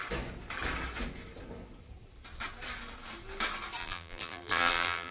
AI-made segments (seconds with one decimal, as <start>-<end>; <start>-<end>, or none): 3.8-5.1